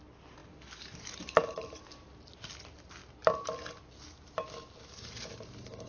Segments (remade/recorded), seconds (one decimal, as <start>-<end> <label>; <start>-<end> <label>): 0.0-0.4 recorded; 0.4-1.8 remade; 1.8-4.9 recorded; 4.9-5.9 remade